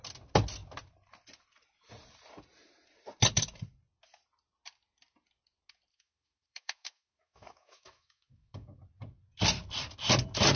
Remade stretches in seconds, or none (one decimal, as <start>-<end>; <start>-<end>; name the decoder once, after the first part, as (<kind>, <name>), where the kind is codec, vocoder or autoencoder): 5.9-8.8 (autoencoder, DAC-VAE)